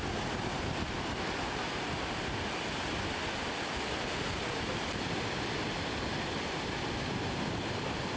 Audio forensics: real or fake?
real